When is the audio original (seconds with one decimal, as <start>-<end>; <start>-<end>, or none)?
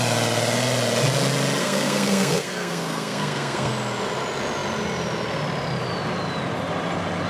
0.0-1.6; 3.7-7.3